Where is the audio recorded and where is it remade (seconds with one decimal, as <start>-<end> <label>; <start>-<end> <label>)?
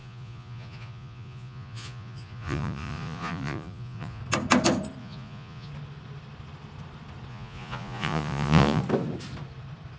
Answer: 0.0-4.2 remade; 4.2-5.0 recorded; 5.0-5.7 remade; 5.7-7.3 recorded; 7.3-8.8 remade; 8.8-10.0 recorded